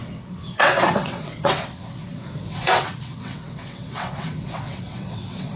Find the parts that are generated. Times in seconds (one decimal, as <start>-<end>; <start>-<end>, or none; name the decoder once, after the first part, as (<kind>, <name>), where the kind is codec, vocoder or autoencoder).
0.0-5.6 (vocoder, WaveNeXt)